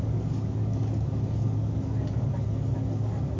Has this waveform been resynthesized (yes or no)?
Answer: yes